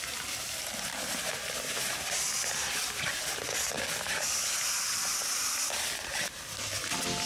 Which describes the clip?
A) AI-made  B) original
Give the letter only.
B